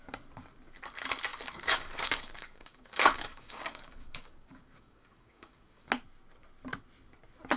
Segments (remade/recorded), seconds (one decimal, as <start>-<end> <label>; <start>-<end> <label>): 0.0-1.3 recorded; 1.3-5.9 remade; 5.9-7.6 recorded